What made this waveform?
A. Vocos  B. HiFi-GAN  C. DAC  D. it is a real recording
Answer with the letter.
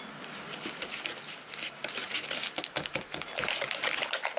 D